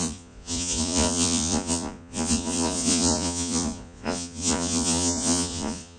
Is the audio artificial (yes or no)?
yes